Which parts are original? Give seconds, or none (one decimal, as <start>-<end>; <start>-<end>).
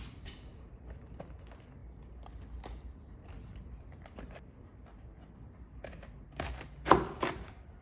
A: 1.8-2.8; 4.7-7.8